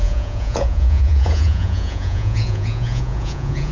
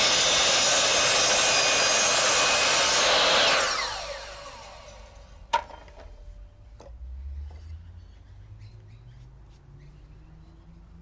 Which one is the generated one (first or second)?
first